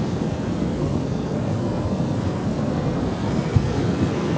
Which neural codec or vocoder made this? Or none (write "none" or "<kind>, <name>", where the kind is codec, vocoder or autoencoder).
codec, SNAC